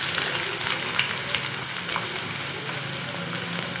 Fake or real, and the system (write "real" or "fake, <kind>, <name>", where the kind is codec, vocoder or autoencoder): real